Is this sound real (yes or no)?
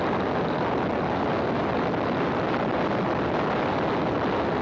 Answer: yes